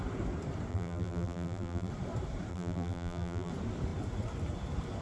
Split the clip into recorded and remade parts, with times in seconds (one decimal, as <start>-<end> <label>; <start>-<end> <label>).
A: 0.0-0.7 recorded; 0.7-1.9 remade; 1.9-2.5 recorded; 2.5-3.5 remade; 3.5-5.0 recorded